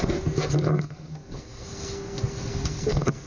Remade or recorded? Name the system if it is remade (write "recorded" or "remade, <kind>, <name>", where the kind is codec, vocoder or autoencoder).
remade, codec, SNAC